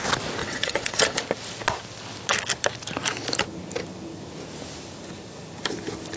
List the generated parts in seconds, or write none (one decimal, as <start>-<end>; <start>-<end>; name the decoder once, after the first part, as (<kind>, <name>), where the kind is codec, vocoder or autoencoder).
0.4-1.2 (vocoder, WaveNeXt)